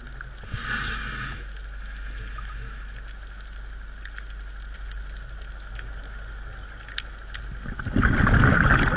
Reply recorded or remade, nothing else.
recorded